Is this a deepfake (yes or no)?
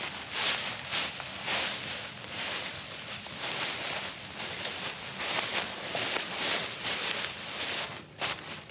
no